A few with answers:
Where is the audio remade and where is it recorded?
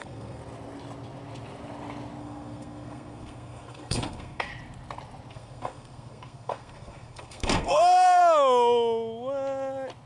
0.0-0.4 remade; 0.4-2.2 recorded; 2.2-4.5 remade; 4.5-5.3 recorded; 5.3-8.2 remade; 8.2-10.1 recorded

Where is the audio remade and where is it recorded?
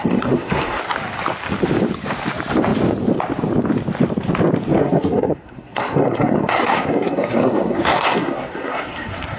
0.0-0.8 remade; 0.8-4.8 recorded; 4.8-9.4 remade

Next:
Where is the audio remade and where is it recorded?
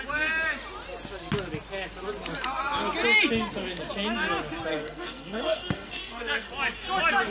0.0-4.7 recorded; 4.7-6.5 remade; 6.5-7.3 recorded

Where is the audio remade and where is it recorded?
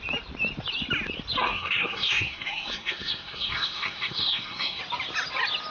0.0-1.4 recorded; 1.4-4.8 remade; 4.8-5.7 recorded